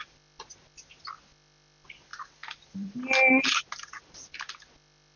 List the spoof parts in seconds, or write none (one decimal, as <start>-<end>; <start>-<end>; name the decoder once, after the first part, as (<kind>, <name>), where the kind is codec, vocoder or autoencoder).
none